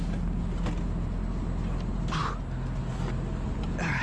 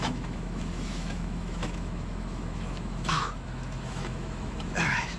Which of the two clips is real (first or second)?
first